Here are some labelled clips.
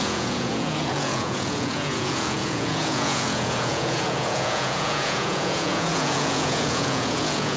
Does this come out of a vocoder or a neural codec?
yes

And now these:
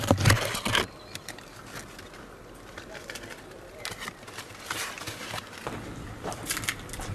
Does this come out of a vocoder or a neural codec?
yes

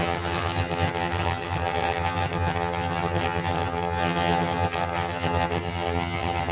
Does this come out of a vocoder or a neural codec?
yes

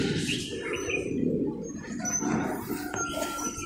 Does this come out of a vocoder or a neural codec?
no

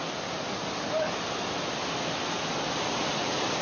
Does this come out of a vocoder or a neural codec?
no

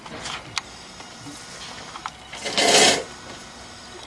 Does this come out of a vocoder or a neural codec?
no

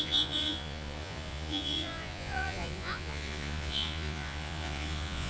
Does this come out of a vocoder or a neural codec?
yes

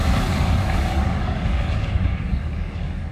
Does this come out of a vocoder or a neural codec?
yes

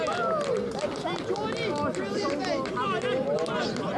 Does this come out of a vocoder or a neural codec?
no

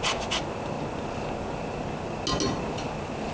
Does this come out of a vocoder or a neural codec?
no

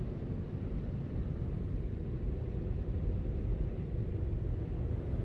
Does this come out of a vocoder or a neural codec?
yes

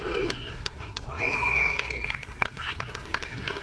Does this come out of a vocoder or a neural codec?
yes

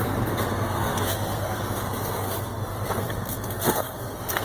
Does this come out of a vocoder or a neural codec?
yes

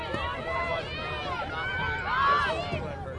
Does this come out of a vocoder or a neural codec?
no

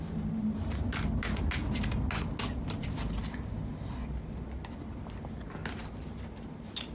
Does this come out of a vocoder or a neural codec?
no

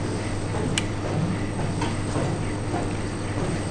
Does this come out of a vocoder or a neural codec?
no